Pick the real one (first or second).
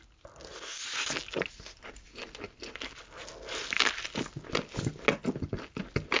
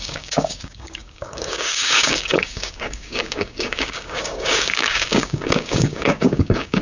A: first